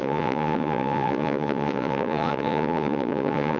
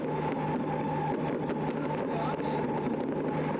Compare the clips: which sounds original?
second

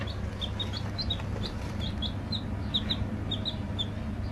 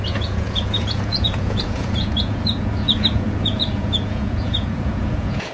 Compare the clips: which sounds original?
first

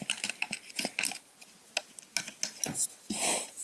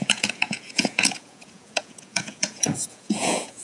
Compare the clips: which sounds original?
first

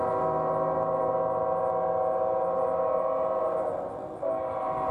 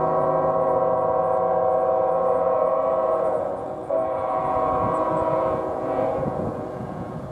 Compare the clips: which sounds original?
first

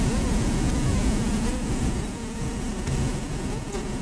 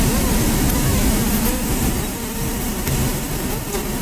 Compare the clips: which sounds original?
second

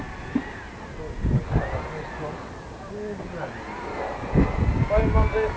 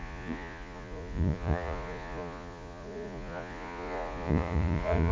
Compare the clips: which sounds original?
first